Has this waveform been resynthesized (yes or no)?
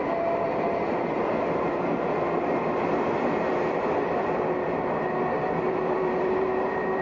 yes